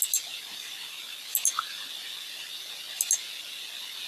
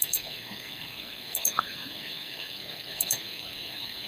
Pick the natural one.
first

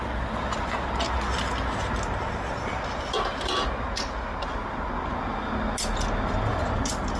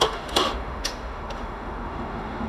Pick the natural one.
first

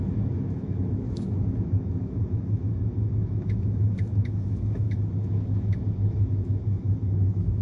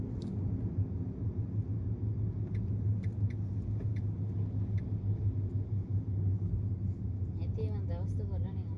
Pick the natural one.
second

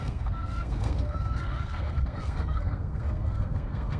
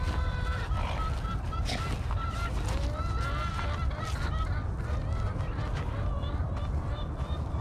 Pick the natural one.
second